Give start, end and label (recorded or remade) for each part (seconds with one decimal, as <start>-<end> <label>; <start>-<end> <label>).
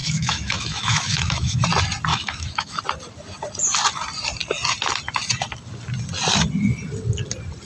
0.0-1.6 remade; 1.6-2.1 recorded; 2.1-2.8 remade; 2.8-7.7 recorded